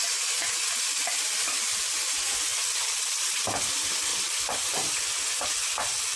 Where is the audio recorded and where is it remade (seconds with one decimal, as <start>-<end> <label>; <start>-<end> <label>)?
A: 0.0-0.6 recorded; 0.6-6.2 remade